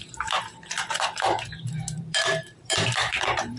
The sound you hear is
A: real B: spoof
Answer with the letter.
B